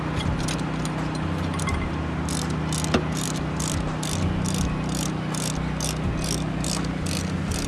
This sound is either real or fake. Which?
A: real